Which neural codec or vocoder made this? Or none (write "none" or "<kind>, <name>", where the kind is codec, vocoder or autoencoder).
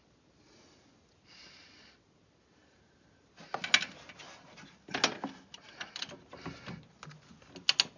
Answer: none